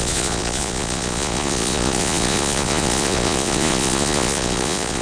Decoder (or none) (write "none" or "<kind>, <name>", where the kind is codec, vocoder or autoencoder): vocoder, Vocos